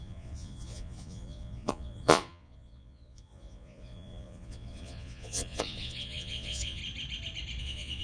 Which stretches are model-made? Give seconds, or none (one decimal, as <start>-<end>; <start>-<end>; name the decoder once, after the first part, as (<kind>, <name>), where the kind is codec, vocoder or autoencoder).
0.0-6.8 (vocoder, Vocos); 7.6-8.0